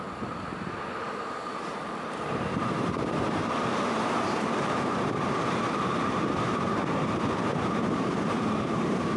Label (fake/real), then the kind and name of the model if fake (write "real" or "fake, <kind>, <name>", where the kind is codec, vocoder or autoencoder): fake, vocoder, BigVGAN v2